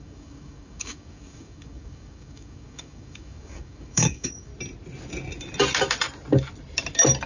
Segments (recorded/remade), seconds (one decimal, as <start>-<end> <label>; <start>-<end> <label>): 0.0-4.5 remade; 4.5-7.3 recorded